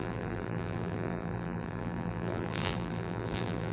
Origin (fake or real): fake